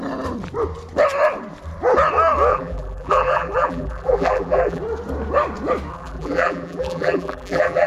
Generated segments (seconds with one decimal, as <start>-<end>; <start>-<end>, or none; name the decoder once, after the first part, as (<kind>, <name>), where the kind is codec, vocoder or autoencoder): 2.5-4.8 (vocoder, BigVGAN v2); 5.9-7.9

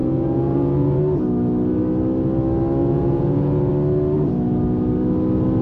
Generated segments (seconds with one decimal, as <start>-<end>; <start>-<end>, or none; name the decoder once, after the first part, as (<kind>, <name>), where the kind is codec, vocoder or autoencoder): 0.0-1.0 (vocoder, Vocos); 2.8-3.7

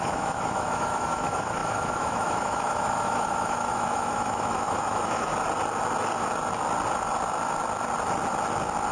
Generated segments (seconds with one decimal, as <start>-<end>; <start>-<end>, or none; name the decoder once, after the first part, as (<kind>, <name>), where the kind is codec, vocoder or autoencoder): 0.0-5.3 (autoencoder, DAC-VAE)

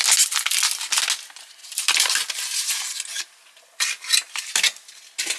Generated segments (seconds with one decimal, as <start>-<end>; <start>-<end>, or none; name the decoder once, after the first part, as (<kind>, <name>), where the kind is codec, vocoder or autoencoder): none

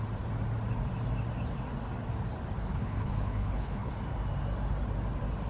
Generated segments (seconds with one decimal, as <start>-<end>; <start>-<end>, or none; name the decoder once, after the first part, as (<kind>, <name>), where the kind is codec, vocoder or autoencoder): 2.7-3.9 (codec, HILCodec)

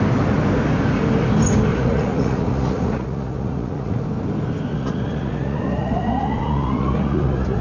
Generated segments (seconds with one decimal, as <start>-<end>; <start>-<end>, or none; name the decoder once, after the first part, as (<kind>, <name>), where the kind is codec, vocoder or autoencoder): 1.7-4.0 (vocoder, Vocos); 4.7-7.6

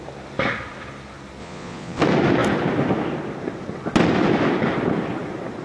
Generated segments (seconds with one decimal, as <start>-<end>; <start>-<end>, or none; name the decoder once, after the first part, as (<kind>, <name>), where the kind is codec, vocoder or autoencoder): 1.4-2.0 (vocoder, Vocos)